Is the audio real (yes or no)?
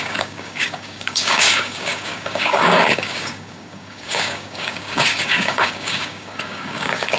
no